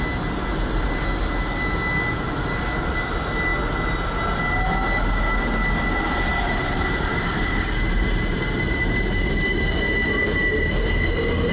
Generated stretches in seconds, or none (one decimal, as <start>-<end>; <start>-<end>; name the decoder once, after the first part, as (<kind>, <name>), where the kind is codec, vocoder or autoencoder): 6.3-11.0 (vocoder, BigVGAN v2)